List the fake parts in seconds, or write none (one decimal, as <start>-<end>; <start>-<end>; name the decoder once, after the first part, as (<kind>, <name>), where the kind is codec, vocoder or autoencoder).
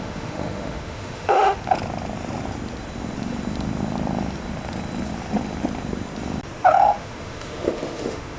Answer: 0.0-1.6 (autoencoder, DAC-VAE); 6.6-8.4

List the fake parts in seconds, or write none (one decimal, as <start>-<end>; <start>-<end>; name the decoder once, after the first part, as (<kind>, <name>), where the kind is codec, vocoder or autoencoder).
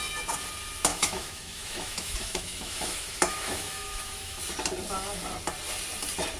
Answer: 0.9-4.4 (autoencoder, DAC-VAE)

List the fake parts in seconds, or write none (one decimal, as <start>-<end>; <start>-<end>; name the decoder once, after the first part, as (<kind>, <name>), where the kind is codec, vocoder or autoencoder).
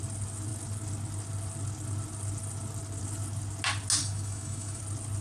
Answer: 4.0-4.8 (autoencoder, DAC-VAE)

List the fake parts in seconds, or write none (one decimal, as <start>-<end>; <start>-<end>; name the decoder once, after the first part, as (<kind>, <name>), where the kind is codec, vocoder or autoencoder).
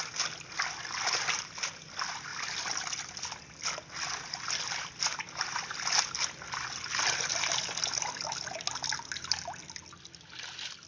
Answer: none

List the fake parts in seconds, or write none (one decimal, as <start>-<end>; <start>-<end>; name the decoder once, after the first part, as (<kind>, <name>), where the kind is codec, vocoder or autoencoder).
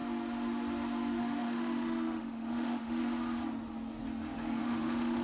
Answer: 1.2-3.0 (autoencoder, DAC-VAE); 4.6-5.2